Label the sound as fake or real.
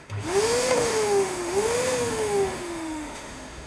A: fake